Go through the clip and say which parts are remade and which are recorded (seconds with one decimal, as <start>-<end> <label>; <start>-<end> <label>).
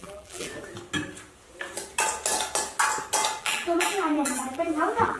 0.0-0.5 remade; 0.5-3.4 recorded; 3.4-5.2 remade